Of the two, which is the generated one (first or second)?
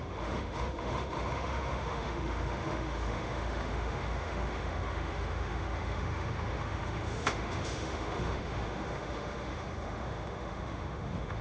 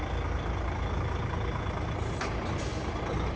first